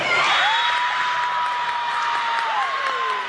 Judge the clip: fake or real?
real